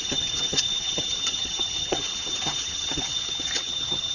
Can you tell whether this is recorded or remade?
remade